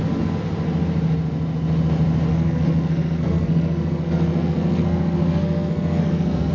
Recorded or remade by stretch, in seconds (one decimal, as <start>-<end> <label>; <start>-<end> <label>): 0.0-2.3 recorded; 2.3-6.5 remade